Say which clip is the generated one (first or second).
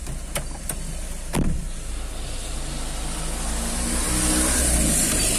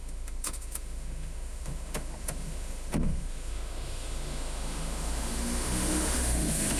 second